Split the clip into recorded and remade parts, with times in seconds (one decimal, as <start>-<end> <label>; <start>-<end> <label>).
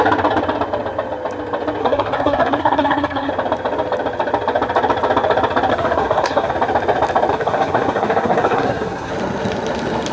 0.0-1.8 recorded; 1.8-3.3 remade; 3.3-5.7 recorded; 5.7-6.5 remade; 6.5-7.3 recorded; 7.3-9.1 remade; 9.1-10.1 recorded